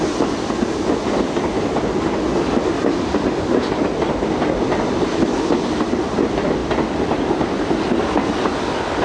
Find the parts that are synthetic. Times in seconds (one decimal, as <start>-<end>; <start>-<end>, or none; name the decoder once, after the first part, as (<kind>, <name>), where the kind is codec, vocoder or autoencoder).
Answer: none